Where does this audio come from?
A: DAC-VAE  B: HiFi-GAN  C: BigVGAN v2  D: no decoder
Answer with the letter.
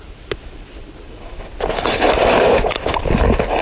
D